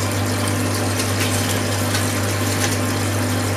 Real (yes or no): yes